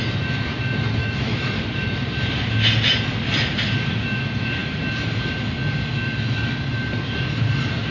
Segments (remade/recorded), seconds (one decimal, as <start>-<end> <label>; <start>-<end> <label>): 0.0-1.0 recorded; 1.0-1.6 remade; 1.6-7.9 recorded